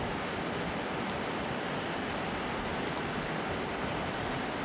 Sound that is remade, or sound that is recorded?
recorded